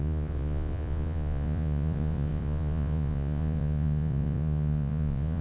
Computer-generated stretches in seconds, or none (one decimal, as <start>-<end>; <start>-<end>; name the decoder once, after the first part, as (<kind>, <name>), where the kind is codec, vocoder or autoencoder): 0.0-5.4 (vocoder, Vocos)